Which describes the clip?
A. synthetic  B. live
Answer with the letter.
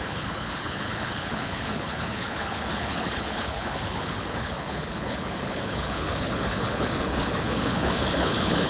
A